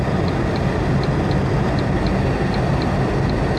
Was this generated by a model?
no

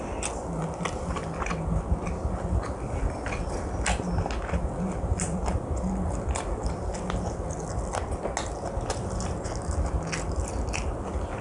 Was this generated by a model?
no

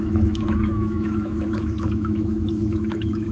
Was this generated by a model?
yes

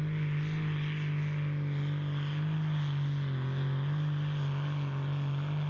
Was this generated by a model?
no